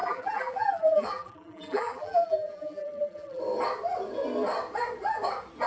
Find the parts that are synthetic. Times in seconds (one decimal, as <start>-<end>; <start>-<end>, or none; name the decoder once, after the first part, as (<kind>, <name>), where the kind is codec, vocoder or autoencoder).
0.0-3.4 (vocoder, BigVGAN v2)